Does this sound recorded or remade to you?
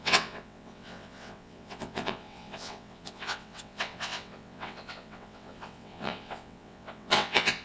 remade